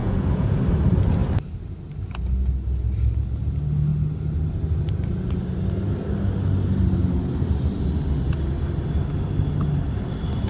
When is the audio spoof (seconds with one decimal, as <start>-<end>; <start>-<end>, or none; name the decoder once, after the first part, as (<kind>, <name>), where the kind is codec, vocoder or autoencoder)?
0.0-0.6 (vocoder, Vocos)